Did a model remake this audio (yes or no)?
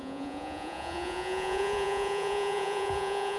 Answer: yes